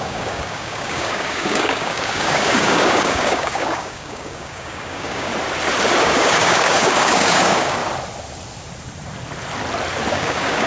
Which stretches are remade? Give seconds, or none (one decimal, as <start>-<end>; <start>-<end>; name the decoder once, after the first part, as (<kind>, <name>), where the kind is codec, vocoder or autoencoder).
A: 0.0-5.3 (codec, DAC); 6.0-7.8; 10.1-10.7